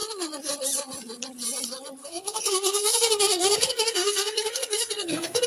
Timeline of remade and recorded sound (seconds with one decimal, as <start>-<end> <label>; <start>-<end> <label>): 0.0-2.0 recorded; 2.0-5.5 remade